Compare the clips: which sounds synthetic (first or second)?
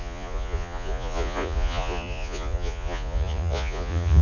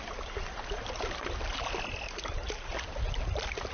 first